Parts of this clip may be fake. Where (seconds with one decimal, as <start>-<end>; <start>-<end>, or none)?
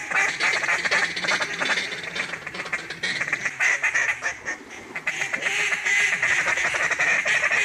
none